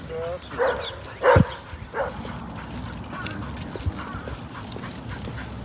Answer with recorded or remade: recorded